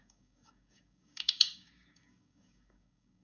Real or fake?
fake